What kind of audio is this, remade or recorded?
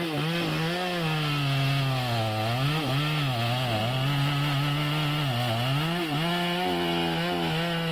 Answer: recorded